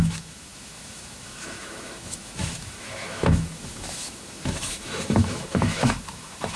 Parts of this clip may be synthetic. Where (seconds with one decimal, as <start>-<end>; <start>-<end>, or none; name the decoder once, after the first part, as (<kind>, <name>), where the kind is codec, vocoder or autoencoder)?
0.0-6.6 (autoencoder, DAC-VAE)